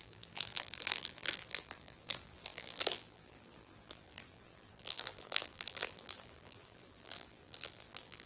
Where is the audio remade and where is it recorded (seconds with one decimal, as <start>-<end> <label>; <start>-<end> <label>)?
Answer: 0.0-8.3 remade